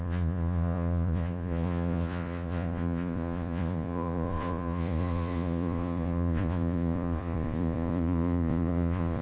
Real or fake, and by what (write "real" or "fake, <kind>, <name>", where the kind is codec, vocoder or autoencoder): fake, vocoder, Vocos